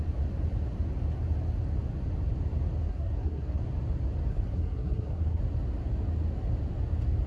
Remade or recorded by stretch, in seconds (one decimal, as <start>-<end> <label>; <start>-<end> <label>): 0.0-2.9 recorded; 2.9-3.6 remade; 3.6-4.3 recorded; 4.3-5.4 remade; 5.4-7.3 recorded